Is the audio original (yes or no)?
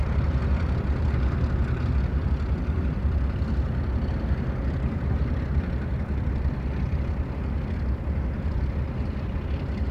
yes